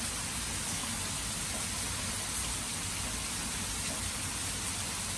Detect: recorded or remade recorded